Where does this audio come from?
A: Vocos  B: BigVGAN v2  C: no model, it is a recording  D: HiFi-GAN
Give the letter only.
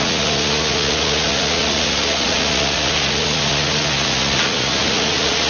A